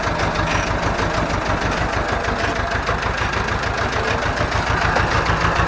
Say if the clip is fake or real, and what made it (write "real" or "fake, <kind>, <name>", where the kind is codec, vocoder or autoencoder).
real